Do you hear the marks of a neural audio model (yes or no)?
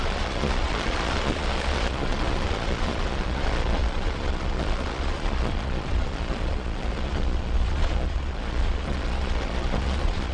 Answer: yes